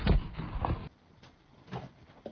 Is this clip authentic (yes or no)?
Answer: yes